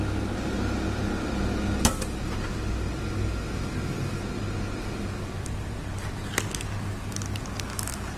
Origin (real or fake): real